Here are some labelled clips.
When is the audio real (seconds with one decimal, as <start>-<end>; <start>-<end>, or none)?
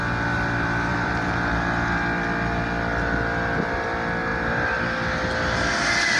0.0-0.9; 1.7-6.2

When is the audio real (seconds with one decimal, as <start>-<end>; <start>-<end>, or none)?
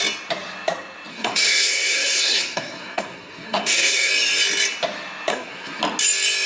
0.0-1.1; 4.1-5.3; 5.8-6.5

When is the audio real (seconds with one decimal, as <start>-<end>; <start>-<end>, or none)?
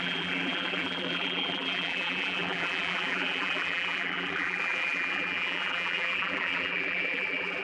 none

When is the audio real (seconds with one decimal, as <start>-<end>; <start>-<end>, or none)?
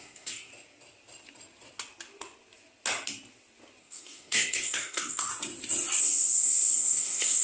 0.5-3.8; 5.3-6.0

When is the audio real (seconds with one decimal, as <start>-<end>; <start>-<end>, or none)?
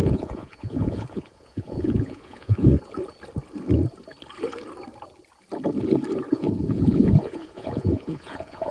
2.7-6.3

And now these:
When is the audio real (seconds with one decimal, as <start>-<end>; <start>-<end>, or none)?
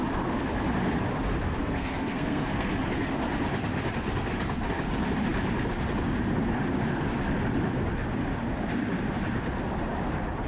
0.0-1.6; 2.7-10.5